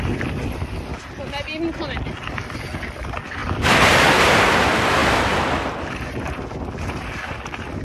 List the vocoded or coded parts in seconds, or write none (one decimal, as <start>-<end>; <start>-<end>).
none